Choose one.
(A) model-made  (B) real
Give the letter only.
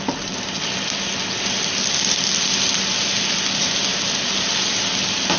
B